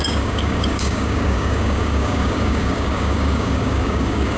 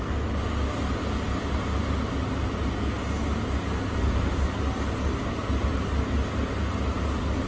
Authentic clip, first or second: second